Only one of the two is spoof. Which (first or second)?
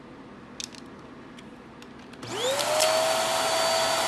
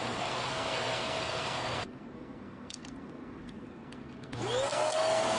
second